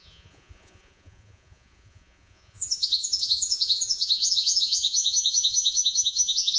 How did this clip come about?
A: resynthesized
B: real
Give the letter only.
A